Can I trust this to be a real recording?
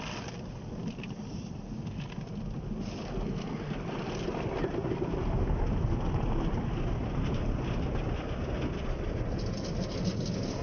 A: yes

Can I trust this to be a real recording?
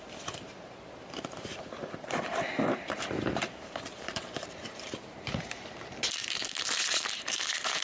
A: no